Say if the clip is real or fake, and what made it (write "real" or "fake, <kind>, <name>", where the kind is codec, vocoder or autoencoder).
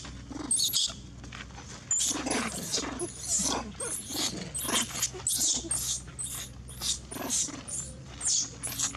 real